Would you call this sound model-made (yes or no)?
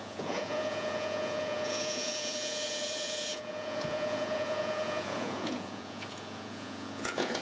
yes